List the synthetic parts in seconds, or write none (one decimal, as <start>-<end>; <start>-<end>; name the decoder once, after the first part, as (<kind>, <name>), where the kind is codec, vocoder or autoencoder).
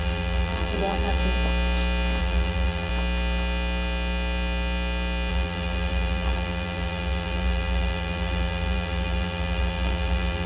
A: 0.0-1.2 (vocoder, BigVGAN v2); 2.2-2.9; 5.3-10.5